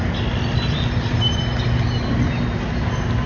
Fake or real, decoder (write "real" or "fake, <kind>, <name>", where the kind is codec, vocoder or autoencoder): real